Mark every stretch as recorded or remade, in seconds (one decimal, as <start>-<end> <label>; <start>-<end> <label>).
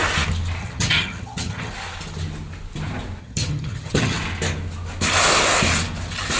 0.0-0.6 recorded; 0.6-1.7 remade; 1.7-3.2 recorded; 3.2-4.2 remade; 4.2-6.4 recorded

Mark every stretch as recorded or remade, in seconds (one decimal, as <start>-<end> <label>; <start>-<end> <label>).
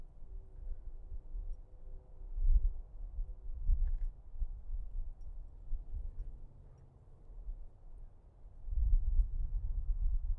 0.0-8.8 recorded; 8.8-10.4 remade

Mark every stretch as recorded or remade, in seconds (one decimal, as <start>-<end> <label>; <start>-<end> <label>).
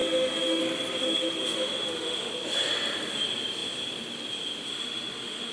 0.0-0.6 remade; 0.6-1.0 recorded; 1.0-2.3 remade; 2.3-4.7 recorded; 4.7-5.5 remade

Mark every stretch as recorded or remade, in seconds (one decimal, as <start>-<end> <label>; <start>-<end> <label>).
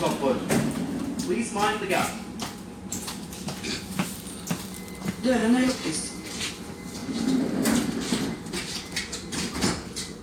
0.0-0.4 recorded; 0.4-3.9 remade; 3.9-5.4 recorded; 5.4-6.4 remade; 6.4-7.0 recorded; 7.0-7.9 remade; 7.9-10.2 recorded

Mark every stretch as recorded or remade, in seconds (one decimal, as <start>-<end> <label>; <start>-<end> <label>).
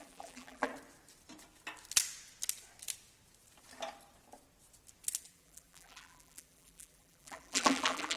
0.0-0.7 remade; 0.7-5.2 recorded; 5.2-8.2 remade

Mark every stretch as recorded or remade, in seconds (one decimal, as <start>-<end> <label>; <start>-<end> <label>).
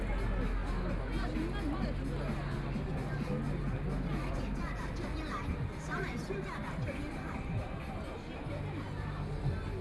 0.0-9.8 recorded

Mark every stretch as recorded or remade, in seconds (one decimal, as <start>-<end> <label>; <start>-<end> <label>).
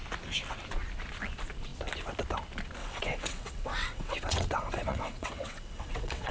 0.0-2.8 recorded; 2.8-6.3 remade